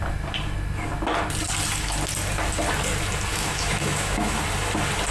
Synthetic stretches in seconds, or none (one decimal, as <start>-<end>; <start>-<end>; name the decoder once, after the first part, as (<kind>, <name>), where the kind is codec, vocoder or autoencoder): 3.3-4.4 (autoencoder, DAC-VAE)